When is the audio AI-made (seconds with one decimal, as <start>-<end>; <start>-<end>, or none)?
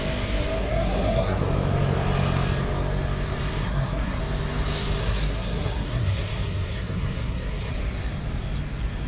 0.6-1.4; 3.6-4.2; 5.0-7.7